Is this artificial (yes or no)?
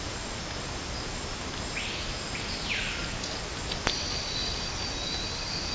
no